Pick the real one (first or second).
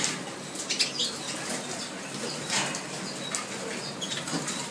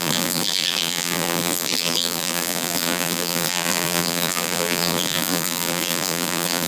first